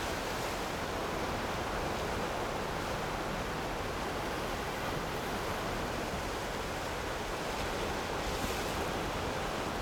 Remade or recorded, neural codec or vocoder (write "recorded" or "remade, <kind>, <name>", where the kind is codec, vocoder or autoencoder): recorded